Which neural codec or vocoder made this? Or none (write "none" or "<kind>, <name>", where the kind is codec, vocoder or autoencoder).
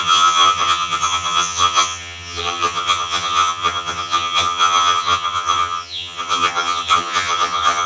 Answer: vocoder, HiFi-GAN